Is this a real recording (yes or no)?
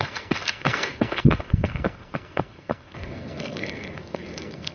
no